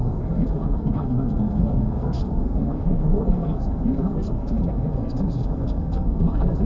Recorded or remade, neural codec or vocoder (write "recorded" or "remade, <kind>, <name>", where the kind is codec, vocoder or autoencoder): remade, codec, SNAC